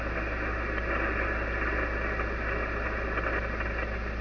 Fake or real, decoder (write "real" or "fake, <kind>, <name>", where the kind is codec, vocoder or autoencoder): real